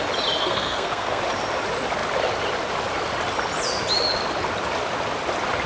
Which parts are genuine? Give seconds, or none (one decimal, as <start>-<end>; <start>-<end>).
0.0-0.4; 1.2-5.7